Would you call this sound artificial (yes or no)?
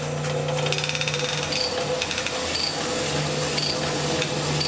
no